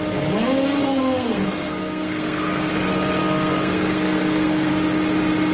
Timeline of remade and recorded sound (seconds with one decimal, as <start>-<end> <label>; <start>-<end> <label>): 0.0-0.8 recorded; 0.8-2.7 remade; 2.7-3.2 recorded; 3.2-4.7 remade; 4.7-5.5 recorded